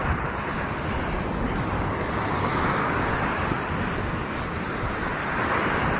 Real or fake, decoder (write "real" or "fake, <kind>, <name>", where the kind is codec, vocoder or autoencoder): real